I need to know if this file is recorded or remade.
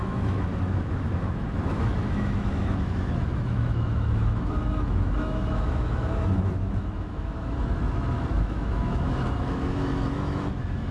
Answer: remade